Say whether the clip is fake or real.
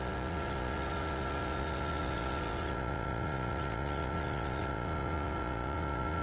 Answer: fake